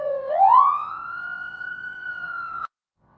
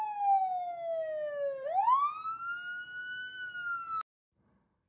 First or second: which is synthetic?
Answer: first